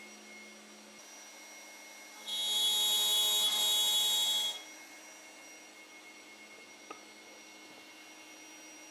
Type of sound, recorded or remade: recorded